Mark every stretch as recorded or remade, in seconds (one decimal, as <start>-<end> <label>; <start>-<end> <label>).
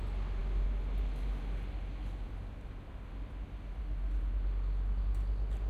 0.0-5.7 recorded